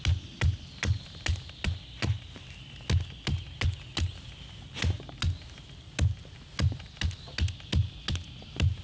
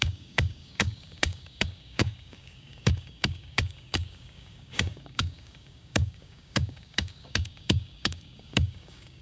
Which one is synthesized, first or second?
second